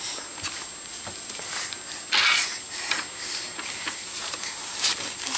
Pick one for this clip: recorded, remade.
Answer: recorded